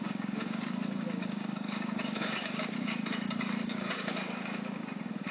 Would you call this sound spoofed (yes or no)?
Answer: yes